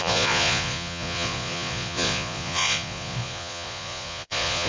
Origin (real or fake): fake